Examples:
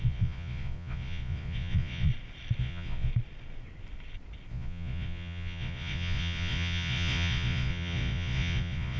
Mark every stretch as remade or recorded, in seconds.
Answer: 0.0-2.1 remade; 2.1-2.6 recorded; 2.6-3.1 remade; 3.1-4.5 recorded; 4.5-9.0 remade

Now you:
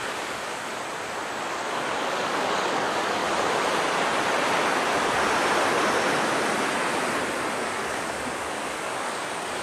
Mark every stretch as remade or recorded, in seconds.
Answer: 0.0-0.7 remade; 0.7-1.4 recorded; 1.4-3.2 remade; 3.2-7.6 recorded; 7.6-9.6 remade

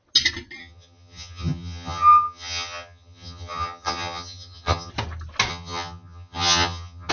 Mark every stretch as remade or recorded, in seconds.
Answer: 0.0-0.6 recorded; 0.6-4.9 remade; 4.9-5.5 recorded; 5.5-7.1 remade

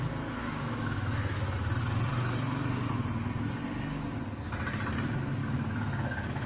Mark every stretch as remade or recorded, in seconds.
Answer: 0.0-0.4 recorded; 0.4-1.4 remade; 1.4-5.4 recorded; 5.4-6.5 remade

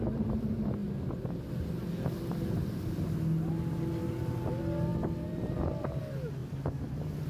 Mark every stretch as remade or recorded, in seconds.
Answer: 0.0-4.9 recorded; 4.9-6.0 remade; 6.0-7.3 recorded

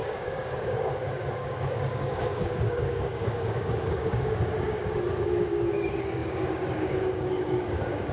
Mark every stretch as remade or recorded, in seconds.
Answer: 0.0-8.1 remade

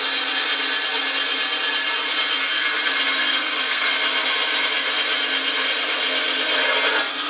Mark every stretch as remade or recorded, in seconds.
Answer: 0.0-3.2 recorded; 3.2-3.9 remade; 3.9-7.3 recorded

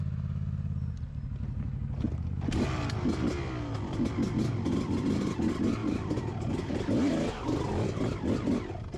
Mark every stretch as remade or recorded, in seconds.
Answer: 0.0-9.0 recorded